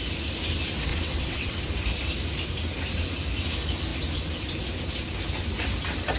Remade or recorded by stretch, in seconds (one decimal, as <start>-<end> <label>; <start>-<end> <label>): 0.0-0.9 recorded; 0.9-1.6 remade; 1.6-6.2 recorded